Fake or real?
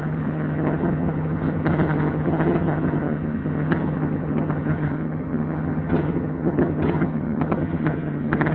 fake